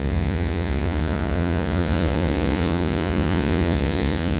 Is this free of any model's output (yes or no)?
no